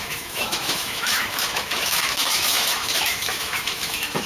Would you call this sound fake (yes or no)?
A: yes